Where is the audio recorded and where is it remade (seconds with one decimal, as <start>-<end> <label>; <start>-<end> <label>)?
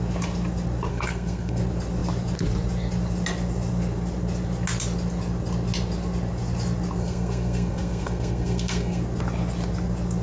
0.0-0.9 recorded; 0.9-1.6 remade; 1.6-7.0 recorded; 7.0-9.0 remade; 9.0-10.2 recorded